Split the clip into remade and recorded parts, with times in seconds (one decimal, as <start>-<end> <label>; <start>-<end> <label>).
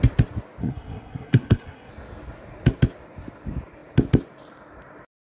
0.0-0.6 recorded; 0.6-1.9 remade; 1.9-5.2 recorded